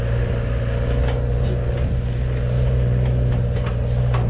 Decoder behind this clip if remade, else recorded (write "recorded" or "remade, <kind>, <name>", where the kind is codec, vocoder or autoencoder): recorded